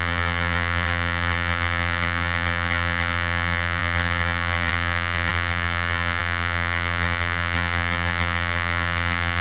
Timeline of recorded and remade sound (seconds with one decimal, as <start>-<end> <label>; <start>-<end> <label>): 0.0-9.4 remade